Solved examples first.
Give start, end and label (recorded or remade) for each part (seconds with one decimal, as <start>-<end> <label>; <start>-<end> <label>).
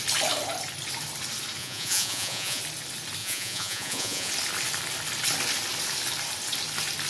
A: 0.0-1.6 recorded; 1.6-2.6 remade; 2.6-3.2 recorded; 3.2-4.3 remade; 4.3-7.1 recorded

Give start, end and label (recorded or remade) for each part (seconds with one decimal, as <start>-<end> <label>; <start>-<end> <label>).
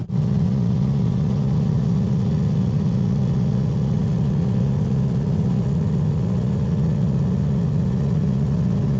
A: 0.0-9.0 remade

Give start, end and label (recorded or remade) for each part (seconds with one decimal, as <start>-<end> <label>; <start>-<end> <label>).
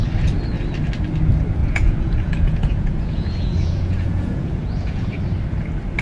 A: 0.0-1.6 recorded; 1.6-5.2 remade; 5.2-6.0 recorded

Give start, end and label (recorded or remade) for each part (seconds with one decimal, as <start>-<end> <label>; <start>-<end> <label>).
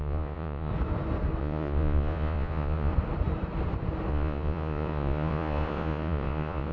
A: 0.0-0.7 remade; 0.7-1.4 recorded; 1.4-2.9 remade; 2.9-4.1 recorded; 4.1-6.7 remade